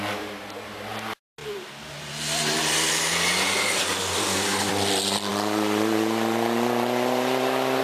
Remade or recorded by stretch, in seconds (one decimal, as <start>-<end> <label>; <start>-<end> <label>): 0.0-7.8 recorded